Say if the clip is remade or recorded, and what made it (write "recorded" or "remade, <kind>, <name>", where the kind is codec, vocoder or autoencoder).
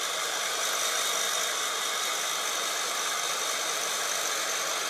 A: recorded